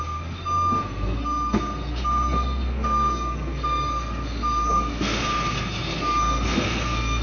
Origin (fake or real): fake